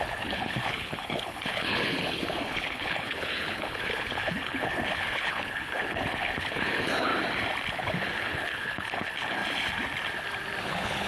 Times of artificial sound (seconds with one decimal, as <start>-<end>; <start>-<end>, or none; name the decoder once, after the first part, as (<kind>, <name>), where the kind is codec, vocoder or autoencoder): 0.0-7.1 (codec, HILCodec); 7.7-9.4; 10.6-11.1